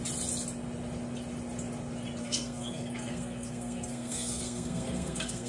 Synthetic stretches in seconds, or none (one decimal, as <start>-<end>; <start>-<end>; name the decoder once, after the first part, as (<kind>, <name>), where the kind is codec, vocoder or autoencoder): 2.2-5.5 (codec, SNAC)